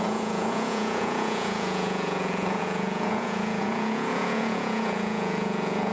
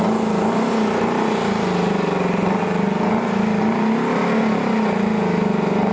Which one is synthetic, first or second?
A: first